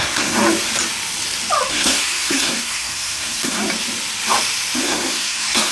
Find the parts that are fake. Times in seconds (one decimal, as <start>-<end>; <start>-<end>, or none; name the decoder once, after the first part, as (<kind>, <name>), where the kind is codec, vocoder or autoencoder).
0.0-0.4 (codec, SNAC); 1.7-3.6; 4.8-5.7